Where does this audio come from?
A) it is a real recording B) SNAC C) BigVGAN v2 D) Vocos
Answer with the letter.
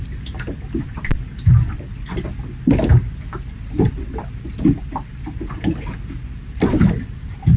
A